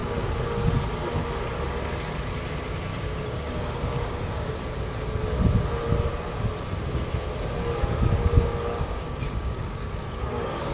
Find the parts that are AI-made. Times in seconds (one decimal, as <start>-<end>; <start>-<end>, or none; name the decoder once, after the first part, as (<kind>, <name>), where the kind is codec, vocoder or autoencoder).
0.0-0.7 (codec, DAC); 2.9-4.5; 8.2-10.7